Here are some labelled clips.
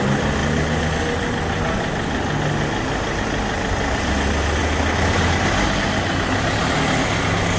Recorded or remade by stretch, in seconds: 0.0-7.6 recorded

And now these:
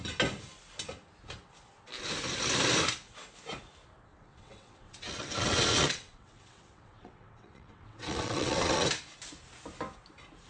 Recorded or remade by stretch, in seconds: 0.0-4.1 recorded; 4.1-8.9 remade; 8.9-10.5 recorded

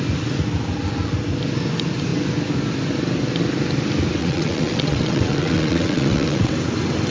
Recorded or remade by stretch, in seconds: 0.0-4.2 recorded; 4.2-6.5 remade; 6.5-7.1 recorded

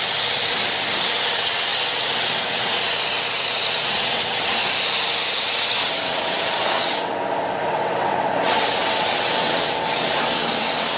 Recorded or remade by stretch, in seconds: 0.0-4.6 remade; 4.6-5.3 recorded; 5.3-7.1 remade; 7.1-7.7 recorded; 7.7-11.0 remade

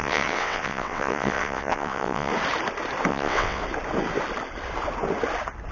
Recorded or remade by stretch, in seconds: 0.0-2.3 remade; 2.3-3.1 recorded; 3.1-3.6 remade; 3.6-5.7 recorded

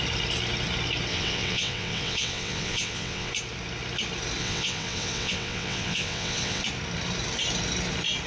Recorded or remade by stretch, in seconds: 0.0-1.1 recorded; 1.1-3.3 remade; 3.3-4.4 recorded; 4.4-6.6 remade; 6.6-8.3 recorded